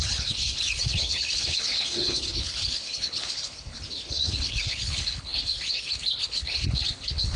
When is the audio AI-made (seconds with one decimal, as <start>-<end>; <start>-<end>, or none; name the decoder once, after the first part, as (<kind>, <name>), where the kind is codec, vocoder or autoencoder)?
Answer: 0.0-7.4 (codec, HILCodec)